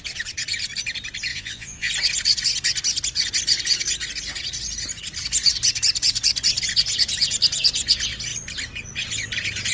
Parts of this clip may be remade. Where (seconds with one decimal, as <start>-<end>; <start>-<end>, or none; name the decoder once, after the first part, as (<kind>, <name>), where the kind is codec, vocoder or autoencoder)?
1.3-1.9 (vocoder, Vocos)